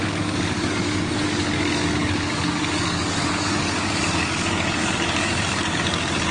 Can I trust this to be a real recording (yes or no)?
no